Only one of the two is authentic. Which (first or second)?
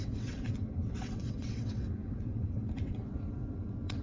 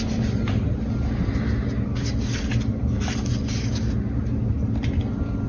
second